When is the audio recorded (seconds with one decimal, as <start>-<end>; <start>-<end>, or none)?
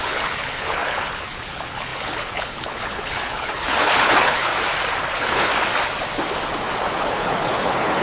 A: 4.5-5.1; 5.5-7.0